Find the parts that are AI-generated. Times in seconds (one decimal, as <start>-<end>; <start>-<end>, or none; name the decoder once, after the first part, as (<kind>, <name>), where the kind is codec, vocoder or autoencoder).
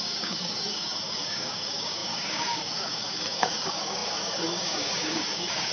0.0-5.7 (codec, DAC)